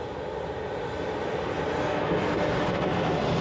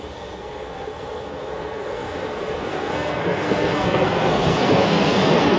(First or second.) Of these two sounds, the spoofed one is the second